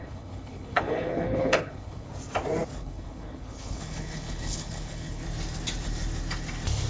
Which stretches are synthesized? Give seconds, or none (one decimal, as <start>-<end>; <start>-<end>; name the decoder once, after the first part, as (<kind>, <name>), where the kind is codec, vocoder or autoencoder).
0.0-2.1 (codec, HILCodec); 2.8-5.2